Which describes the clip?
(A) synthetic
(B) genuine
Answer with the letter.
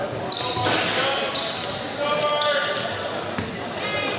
B